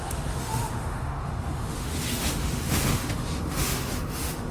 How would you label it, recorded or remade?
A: remade